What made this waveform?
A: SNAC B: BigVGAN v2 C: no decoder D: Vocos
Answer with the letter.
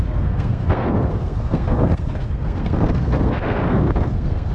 A